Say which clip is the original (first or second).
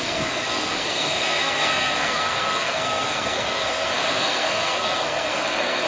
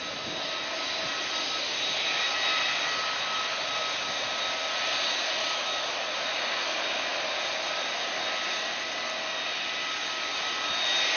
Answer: second